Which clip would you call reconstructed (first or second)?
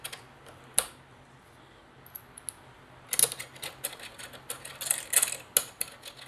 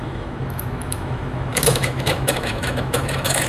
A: second